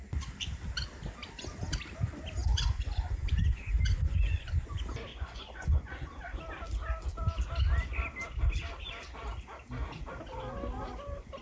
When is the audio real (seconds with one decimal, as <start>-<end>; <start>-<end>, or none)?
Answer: 0.0-2.4; 4.5-5.1; 6.4-11.4